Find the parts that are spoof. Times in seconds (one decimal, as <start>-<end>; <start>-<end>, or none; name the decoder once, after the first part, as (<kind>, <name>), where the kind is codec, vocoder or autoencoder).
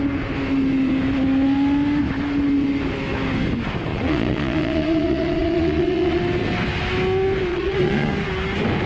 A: 3.9-6.2 (vocoder, Vocos); 7.5-8.1